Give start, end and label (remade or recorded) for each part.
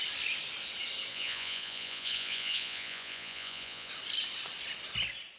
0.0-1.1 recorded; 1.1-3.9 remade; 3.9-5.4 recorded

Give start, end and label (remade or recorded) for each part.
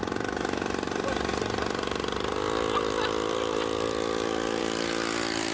0.0-5.5 recorded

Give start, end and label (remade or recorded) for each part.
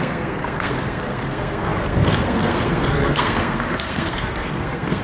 0.0-5.0 remade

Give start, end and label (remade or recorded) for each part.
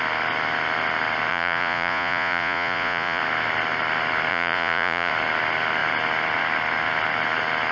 0.0-1.3 recorded; 1.3-3.2 remade; 3.2-4.3 recorded; 4.3-5.1 remade; 5.1-7.7 recorded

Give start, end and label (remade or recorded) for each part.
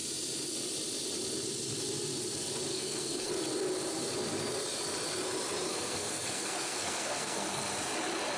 0.0-2.7 recorded; 2.7-3.3 remade; 3.3-5.7 recorded; 5.7-7.7 remade; 7.7-8.4 recorded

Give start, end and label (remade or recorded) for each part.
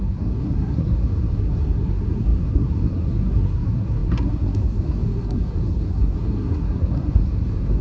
0.0-7.8 remade